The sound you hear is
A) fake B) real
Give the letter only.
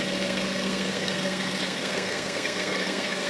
A